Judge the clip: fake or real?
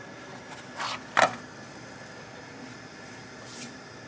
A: real